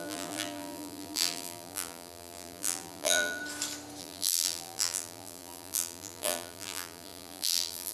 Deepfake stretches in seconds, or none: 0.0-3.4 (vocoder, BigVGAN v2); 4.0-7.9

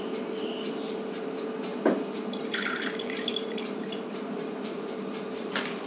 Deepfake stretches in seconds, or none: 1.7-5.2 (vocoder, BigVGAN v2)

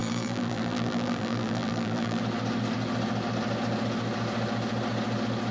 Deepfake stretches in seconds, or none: 0.0-2.2 (vocoder, BigVGAN v2)